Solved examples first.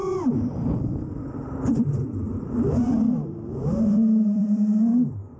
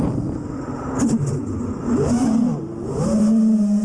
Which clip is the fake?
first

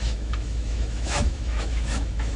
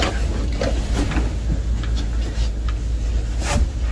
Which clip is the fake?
first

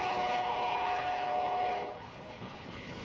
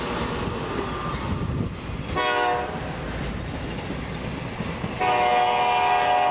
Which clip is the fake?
first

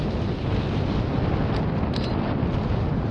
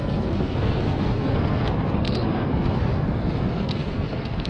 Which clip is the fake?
second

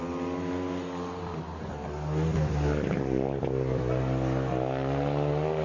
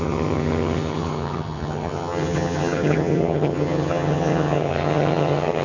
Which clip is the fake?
second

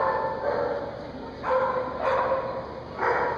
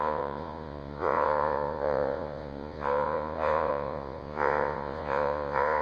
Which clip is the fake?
second